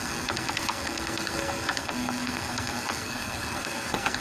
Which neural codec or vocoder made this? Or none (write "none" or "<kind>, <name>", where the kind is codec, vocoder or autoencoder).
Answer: codec, SNAC